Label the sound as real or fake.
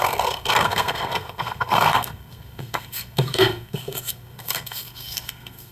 fake